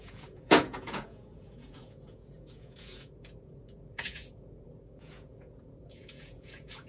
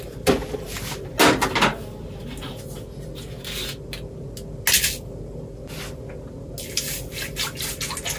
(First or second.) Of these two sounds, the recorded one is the second